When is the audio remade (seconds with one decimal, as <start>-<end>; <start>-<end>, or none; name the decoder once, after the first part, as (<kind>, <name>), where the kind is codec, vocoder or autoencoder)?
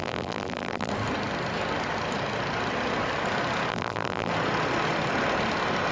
0.0-0.9 (vocoder, BigVGAN v2); 3.7-4.3